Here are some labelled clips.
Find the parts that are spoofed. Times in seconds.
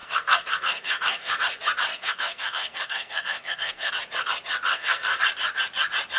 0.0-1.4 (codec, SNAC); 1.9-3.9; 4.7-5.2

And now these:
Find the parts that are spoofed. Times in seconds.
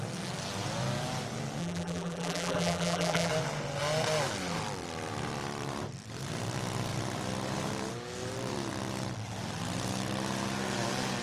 1.6-3.3 (vocoder, BigVGAN v2)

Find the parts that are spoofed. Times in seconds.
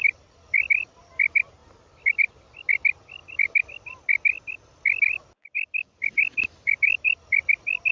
none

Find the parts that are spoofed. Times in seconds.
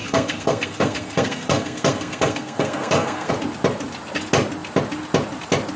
0.0-3.3 (codec, SNAC)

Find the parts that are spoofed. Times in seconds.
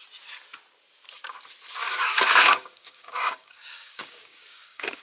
1.8-5.0 (codec, DAC)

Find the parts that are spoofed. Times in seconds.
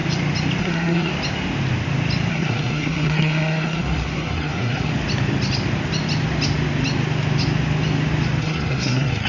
0.6-1.1 (codec, SNAC); 2.3-4.9; 8.4-9.3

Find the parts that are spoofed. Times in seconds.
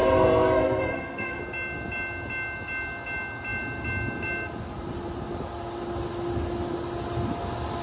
0.0-1.4 (codec, SNAC)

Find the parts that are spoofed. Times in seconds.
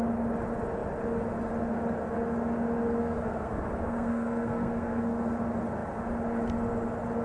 3.0-5.1 (codec, SNAC)